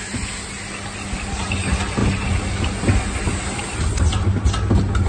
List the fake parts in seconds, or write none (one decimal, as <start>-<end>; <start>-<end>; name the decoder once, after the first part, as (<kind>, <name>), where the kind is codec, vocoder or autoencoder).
none